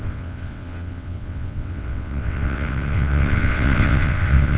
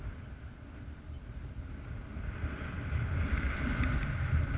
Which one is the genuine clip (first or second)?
second